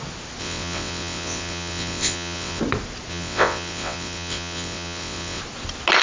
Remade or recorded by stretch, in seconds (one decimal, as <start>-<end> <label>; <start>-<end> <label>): 0.0-0.4 recorded; 0.4-2.6 remade; 2.6-3.1 recorded; 3.1-5.4 remade; 5.4-6.0 recorded